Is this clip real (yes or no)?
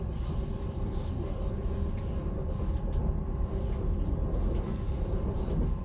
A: yes